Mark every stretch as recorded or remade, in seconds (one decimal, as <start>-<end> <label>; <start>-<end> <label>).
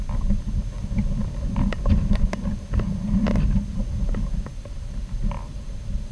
0.0-4.5 recorded; 4.5-6.1 remade